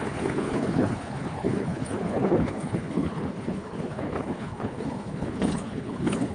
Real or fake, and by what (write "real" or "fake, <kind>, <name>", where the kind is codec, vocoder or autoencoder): fake, codec, HILCodec